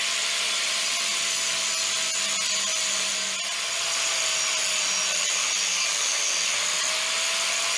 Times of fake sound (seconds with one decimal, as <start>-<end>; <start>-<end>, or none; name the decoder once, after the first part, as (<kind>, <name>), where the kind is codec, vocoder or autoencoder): 5.7-6.2 (codec, DAC)